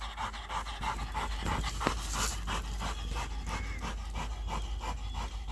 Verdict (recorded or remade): recorded